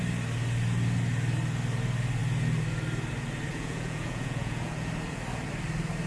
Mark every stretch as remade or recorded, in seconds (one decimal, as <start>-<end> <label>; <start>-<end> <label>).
0.0-3.5 recorded; 3.5-4.9 remade; 4.9-6.1 recorded